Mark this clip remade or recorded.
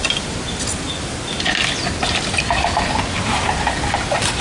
recorded